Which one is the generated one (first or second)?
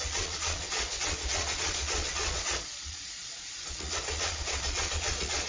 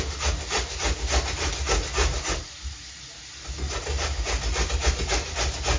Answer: first